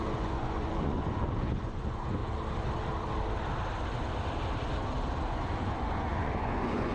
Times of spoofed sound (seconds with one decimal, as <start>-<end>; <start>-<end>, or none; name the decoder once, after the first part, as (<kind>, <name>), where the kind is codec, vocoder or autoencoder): 0.0-2.2 (vocoder, Vocos); 5.3-6.9